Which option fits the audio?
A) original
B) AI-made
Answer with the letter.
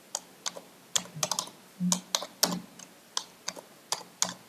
A